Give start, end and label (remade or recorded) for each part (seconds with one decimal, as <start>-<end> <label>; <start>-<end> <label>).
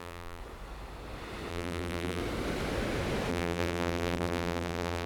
0.0-0.4 remade; 0.4-1.5 recorded; 1.5-2.2 remade; 2.2-3.3 recorded; 3.3-5.1 remade